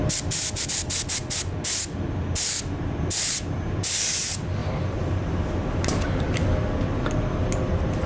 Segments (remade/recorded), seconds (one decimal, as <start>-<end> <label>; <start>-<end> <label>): 0.0-4.6 recorded; 4.6-6.4 remade; 6.4-8.1 recorded